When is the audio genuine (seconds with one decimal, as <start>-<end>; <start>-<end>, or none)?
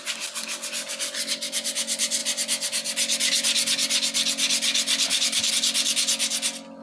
0.0-6.8